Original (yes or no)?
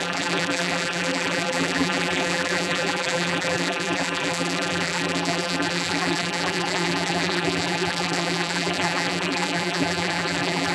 no